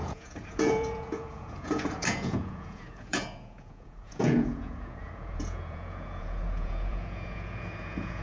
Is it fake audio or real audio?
fake